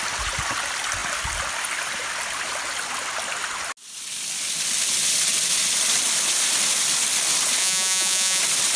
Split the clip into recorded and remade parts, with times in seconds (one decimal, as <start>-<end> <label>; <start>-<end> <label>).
0.0-7.6 recorded; 7.6-8.4 remade; 8.4-8.8 recorded